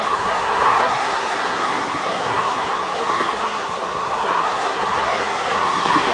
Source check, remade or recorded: remade